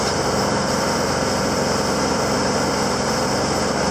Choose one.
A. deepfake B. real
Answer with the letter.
A